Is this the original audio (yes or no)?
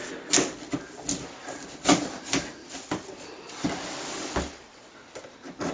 yes